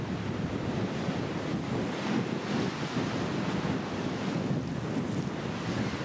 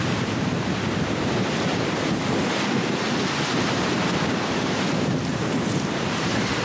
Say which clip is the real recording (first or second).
first